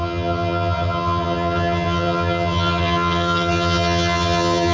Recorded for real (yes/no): no